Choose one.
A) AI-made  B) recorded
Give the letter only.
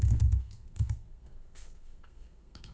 A